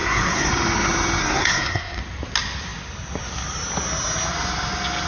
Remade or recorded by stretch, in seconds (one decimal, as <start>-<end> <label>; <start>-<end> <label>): 0.0-0.5 remade; 0.5-1.2 recorded; 1.2-2.0 remade; 2.0-5.1 recorded